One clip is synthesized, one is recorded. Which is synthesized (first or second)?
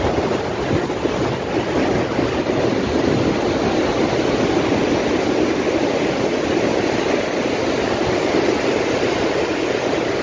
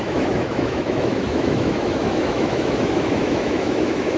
second